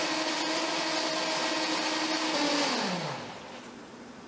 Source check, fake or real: real